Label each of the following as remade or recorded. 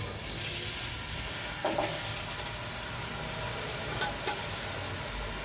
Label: recorded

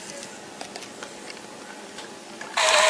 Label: remade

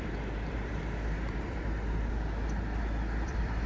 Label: remade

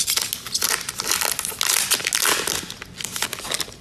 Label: recorded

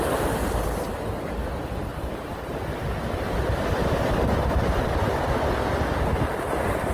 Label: recorded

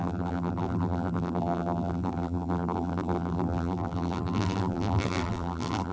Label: remade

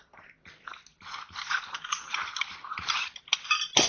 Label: recorded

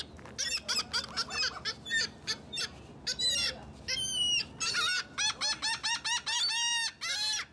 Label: recorded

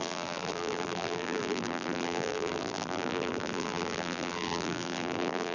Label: remade